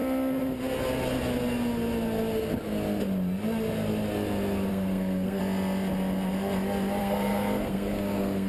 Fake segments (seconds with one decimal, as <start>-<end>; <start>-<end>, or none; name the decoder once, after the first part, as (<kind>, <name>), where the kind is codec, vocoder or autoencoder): 4.7-5.4 (codec, SNAC); 7.0-8.5